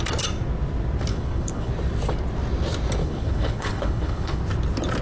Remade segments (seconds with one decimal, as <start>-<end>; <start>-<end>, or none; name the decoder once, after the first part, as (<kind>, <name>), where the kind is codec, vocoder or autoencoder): 1.1-1.7 (codec, HILCodec); 3.0-4.4